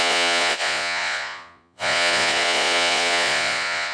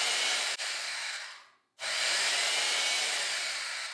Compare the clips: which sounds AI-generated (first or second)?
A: first